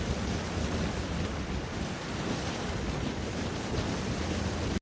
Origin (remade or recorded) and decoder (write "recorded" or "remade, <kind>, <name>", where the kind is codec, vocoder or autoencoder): recorded